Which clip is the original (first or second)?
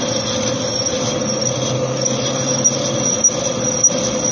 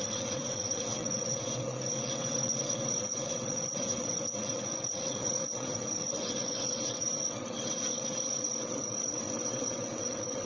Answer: first